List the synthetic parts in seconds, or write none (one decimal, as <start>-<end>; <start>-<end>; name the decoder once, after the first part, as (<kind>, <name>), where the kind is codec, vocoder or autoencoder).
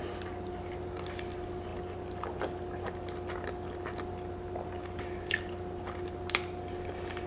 none